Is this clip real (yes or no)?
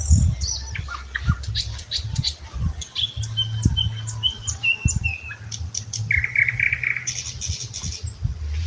yes